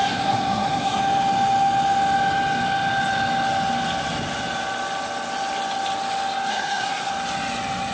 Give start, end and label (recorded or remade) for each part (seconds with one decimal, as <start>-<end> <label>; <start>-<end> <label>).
0.0-1.0 remade; 1.0-6.5 recorded; 6.5-7.1 remade; 7.1-7.9 recorded